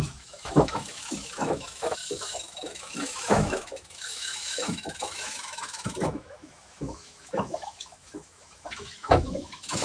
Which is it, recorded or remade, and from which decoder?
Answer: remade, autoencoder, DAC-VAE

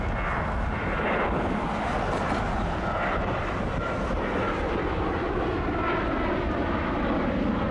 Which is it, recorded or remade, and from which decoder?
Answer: recorded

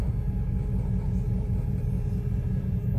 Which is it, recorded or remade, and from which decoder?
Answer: recorded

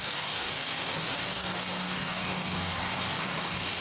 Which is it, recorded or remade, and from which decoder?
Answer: remade, codec, DAC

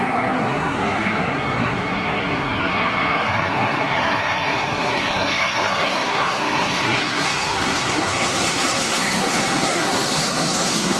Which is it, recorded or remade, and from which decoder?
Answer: remade, codec, SNAC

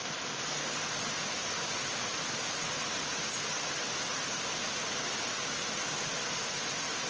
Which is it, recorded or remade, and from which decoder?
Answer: recorded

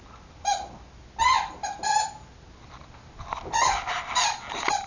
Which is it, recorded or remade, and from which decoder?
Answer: recorded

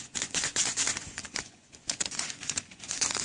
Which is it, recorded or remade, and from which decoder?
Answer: remade, vocoder, Vocos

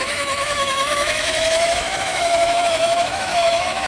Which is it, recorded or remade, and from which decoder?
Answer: remade, autoencoder, DAC-VAE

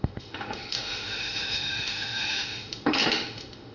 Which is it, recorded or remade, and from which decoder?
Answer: remade, autoencoder, DAC-VAE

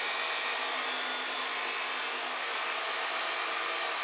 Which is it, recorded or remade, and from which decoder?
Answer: recorded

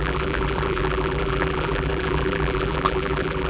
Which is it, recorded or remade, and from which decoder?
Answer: remade, vocoder, BigVGAN v2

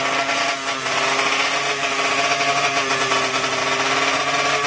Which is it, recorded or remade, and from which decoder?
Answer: recorded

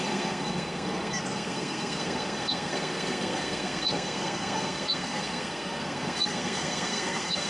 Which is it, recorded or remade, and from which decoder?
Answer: remade, codec, SNAC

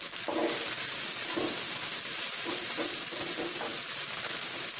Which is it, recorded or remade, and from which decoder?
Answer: recorded